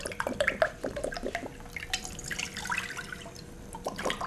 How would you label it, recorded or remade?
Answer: recorded